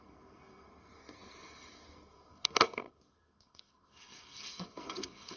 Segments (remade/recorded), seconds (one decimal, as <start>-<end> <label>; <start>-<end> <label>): 0.0-5.4 remade